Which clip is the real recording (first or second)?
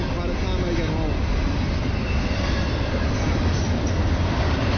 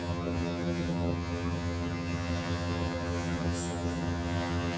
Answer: first